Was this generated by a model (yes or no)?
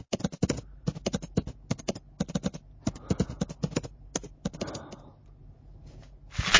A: no